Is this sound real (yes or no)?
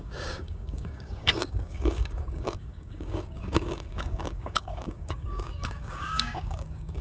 no